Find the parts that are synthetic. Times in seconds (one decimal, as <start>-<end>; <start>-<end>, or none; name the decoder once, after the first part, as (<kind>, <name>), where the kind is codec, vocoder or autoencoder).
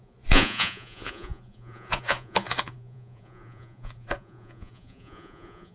0.0-5.7 (vocoder, Vocos)